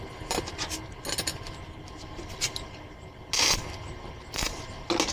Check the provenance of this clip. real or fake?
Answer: real